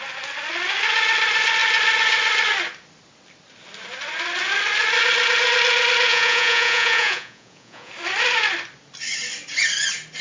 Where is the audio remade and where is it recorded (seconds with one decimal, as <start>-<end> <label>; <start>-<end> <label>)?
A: 0.0-6.1 recorded; 6.1-7.9 remade; 7.9-10.2 recorded